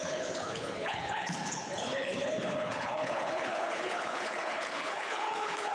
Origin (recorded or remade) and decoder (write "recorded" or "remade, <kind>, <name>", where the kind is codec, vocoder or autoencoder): remade, codec, HILCodec